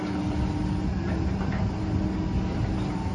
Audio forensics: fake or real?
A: real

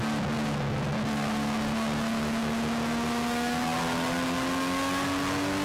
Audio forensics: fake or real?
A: real